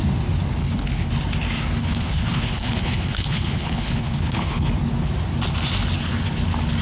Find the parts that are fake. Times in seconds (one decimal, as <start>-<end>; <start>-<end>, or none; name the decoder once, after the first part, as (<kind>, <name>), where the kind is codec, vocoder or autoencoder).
0.6-1.1 (codec, HILCodec); 1.8-4.7